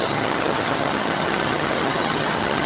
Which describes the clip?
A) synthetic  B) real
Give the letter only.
A